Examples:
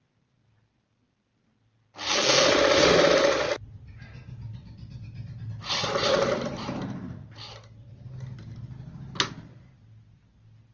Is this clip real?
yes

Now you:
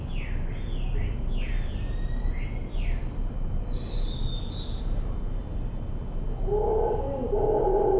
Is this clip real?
yes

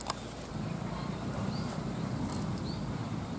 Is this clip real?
yes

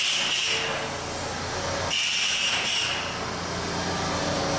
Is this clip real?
yes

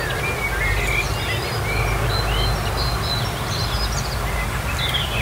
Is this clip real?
yes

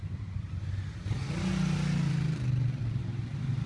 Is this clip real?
yes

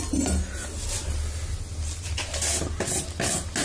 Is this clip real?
yes